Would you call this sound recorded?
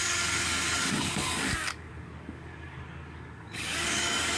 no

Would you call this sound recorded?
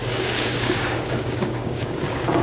no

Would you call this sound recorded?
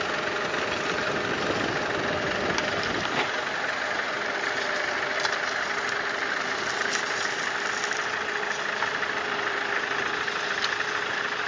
yes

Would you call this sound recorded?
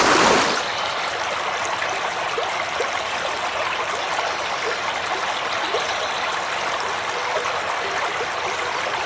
yes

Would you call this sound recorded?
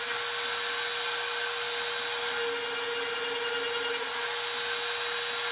yes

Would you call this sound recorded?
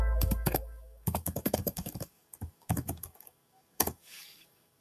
no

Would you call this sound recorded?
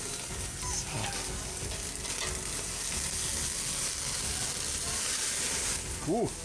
yes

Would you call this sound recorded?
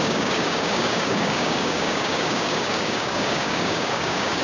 no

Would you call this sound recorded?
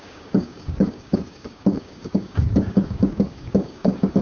no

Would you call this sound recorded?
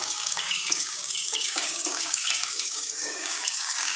no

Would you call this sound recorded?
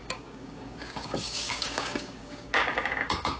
no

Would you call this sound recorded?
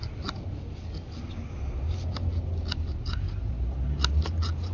yes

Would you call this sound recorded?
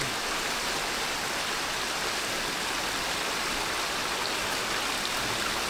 yes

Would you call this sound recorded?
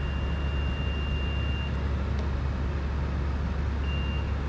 yes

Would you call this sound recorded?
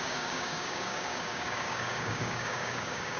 no